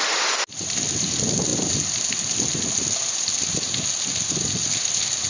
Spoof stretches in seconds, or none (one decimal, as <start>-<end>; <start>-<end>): 1.5-2.1